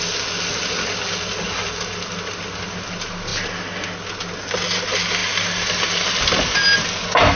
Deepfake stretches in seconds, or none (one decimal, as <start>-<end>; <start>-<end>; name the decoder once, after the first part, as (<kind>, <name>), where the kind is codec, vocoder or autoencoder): none